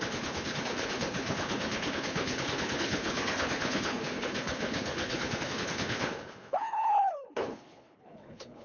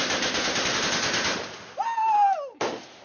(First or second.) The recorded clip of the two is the second